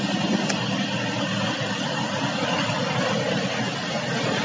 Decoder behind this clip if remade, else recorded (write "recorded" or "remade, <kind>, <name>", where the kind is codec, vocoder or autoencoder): recorded